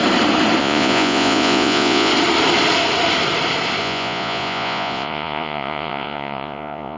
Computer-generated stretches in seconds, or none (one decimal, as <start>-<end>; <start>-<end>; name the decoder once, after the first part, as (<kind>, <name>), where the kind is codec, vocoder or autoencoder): 0.6-2.1 (vocoder, Vocos); 3.8-7.0

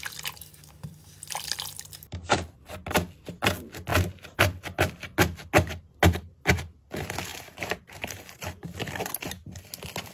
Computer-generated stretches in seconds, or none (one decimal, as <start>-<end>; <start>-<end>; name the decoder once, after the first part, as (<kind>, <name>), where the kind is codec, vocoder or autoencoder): 7.3-9.1 (vocoder, BigVGAN v2)